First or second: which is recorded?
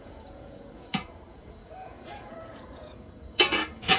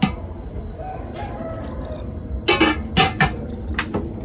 second